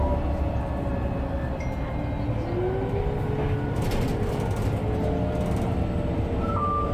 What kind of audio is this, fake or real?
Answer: real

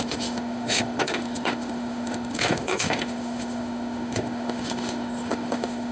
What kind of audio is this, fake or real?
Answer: fake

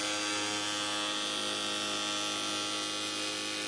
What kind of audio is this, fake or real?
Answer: real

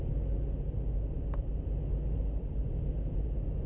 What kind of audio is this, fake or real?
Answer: real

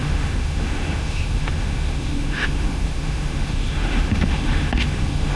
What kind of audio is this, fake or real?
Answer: fake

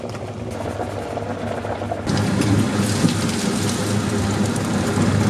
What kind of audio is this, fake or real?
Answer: real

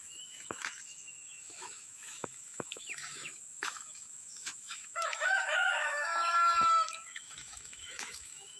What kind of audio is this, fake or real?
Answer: fake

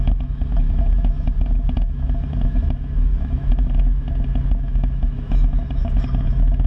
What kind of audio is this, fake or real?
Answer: fake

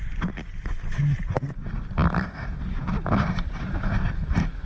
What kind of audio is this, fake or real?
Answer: real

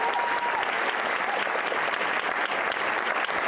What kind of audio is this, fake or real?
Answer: real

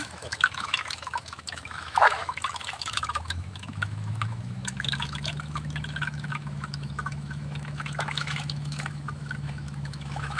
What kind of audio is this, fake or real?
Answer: fake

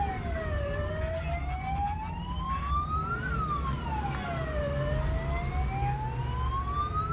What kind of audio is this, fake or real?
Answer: real